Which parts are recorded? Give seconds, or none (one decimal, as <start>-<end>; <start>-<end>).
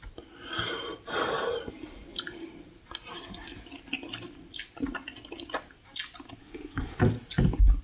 0.0-6.4; 7.0-7.8